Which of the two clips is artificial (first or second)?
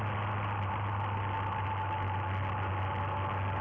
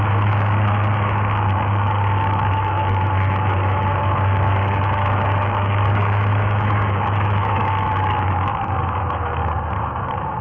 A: second